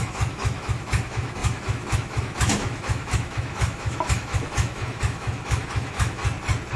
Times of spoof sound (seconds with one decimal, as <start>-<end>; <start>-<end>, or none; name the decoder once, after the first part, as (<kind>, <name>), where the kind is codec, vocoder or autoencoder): 0.0-6.2 (autoencoder, DAC-VAE)